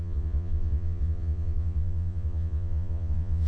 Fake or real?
fake